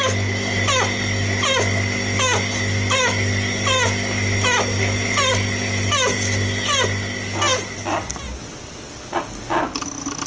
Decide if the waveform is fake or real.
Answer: real